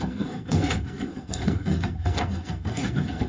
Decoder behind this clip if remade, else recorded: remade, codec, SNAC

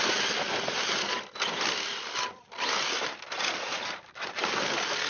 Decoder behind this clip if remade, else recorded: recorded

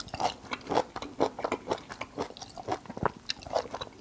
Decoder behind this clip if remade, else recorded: recorded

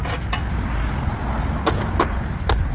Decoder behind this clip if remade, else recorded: recorded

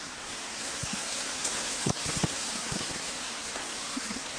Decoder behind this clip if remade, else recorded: remade, codec, SNAC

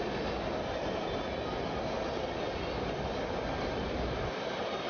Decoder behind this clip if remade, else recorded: recorded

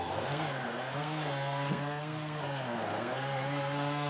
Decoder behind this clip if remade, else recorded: remade, codec, SNAC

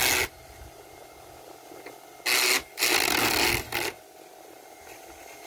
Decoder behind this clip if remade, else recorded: recorded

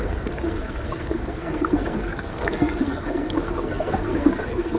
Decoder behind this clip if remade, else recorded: remade, codec, SNAC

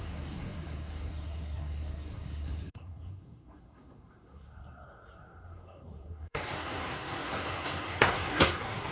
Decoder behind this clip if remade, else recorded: remade, codec, SNAC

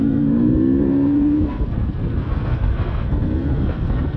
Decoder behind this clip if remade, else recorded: remade, codec, SNAC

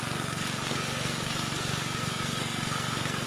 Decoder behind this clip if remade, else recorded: remade, codec, SNAC